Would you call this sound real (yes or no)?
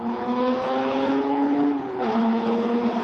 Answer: no